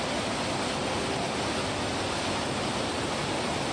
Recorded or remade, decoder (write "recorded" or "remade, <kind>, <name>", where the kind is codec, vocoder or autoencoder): recorded